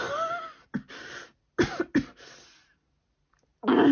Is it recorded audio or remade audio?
recorded